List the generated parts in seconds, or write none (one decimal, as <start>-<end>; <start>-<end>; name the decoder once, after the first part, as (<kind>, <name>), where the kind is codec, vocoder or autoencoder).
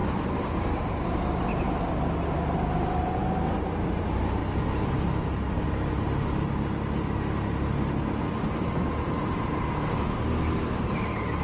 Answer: none